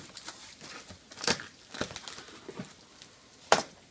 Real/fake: real